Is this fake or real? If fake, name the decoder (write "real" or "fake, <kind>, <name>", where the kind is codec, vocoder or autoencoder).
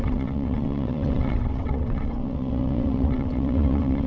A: fake, vocoder, WaveNeXt